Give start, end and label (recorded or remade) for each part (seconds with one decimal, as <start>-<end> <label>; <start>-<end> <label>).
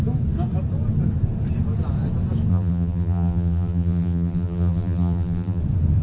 0.0-2.5 recorded; 2.5-5.6 remade; 5.6-6.0 recorded